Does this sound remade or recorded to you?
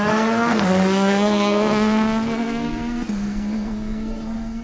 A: remade